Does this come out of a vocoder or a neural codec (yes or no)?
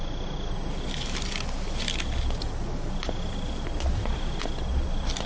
no